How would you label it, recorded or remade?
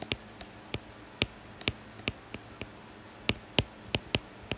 recorded